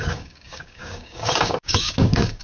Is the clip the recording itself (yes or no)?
no